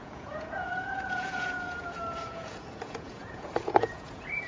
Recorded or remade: remade